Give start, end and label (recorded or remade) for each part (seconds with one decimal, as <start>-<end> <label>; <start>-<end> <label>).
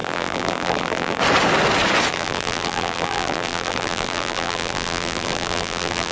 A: 0.0-1.2 remade; 1.2-2.1 recorded; 2.1-6.1 remade